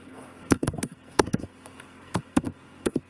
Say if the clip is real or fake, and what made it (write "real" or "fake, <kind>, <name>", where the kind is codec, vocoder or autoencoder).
fake, codec, SNAC